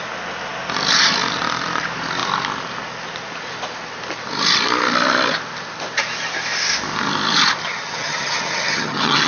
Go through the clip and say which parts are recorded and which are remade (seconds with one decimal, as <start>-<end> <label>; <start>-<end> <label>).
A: 0.0-7.6 recorded; 7.6-9.3 remade